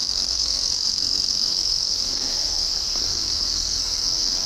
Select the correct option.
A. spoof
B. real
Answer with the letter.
A